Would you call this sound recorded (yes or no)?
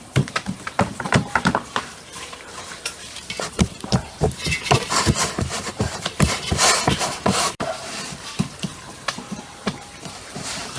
no